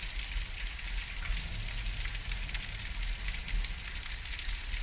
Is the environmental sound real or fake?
real